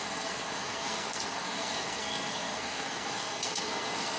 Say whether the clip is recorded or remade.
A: remade